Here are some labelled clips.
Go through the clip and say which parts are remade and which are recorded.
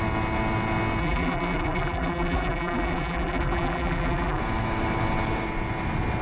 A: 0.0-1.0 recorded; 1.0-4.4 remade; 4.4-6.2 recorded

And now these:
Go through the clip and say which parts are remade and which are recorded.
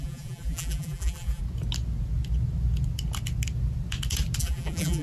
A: 0.0-1.4 remade; 1.4-4.4 recorded; 4.4-5.0 remade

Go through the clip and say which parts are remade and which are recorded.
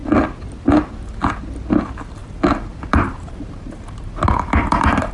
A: 0.0-2.2 recorded; 2.2-5.1 remade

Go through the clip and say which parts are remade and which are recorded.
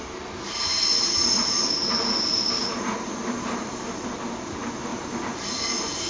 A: 0.0-2.6 recorded; 2.6-4.1 remade; 4.1-4.9 recorded; 4.9-5.6 remade; 5.6-6.1 recorded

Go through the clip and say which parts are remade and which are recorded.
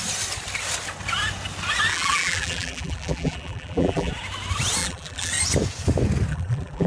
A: 0.0-1.9 recorded; 1.9-4.1 remade; 4.1-4.8 recorded; 4.8-5.3 remade; 5.3-6.3 recorded; 6.3-6.9 remade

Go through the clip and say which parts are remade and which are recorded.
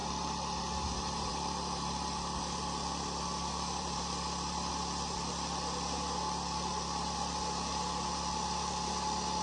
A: 0.0-0.6 remade; 0.6-1.3 recorded; 1.3-4.7 remade; 4.7-9.4 recorded